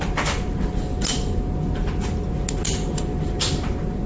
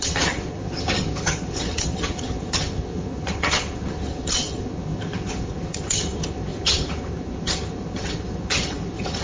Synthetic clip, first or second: second